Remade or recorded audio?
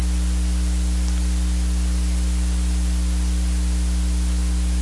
recorded